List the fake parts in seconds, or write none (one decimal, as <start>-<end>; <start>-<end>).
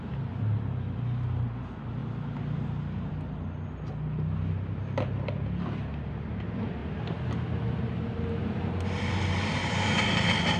none